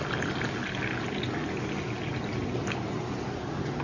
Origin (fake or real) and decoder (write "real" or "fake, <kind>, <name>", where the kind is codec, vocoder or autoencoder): real